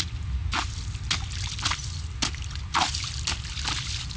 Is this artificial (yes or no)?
no